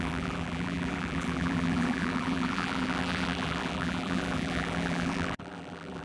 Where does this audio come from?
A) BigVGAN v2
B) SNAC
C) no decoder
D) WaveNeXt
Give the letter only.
A